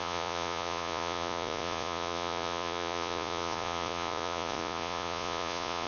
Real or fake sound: fake